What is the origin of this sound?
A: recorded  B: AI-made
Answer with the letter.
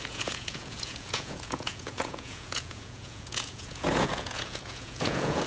B